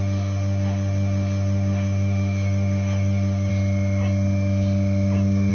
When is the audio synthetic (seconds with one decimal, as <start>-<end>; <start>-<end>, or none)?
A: 0.0-3.5